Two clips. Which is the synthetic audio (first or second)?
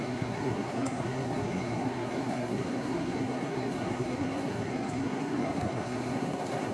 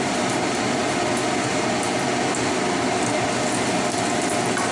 first